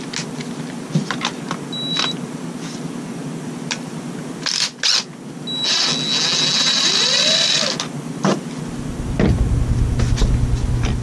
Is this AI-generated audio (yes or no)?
no